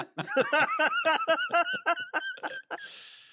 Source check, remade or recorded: recorded